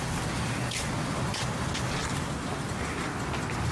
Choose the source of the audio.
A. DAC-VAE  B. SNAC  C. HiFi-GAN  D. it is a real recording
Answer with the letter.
D